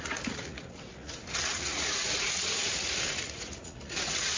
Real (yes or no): no